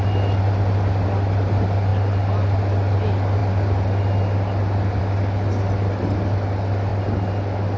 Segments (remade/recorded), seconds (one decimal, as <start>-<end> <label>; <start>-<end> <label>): 0.0-7.8 recorded